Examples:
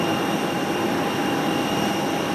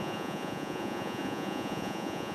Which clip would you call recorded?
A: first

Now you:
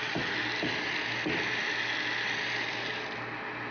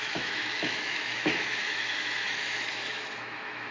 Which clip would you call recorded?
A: first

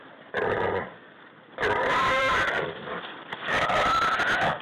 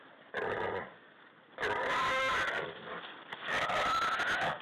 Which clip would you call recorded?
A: second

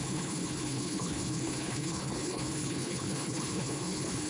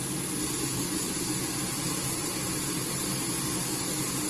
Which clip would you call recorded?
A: second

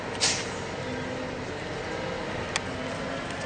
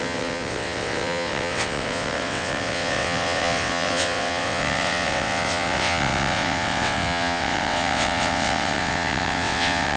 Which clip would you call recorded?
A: first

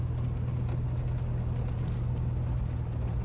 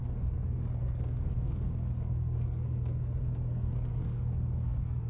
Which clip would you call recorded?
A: first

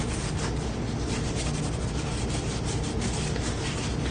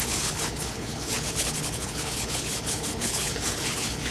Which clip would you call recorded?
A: first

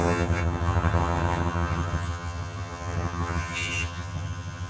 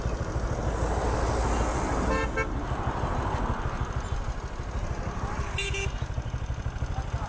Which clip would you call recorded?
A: second